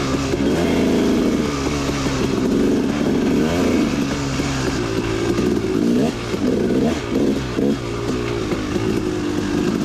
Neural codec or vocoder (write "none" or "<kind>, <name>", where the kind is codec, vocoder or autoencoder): none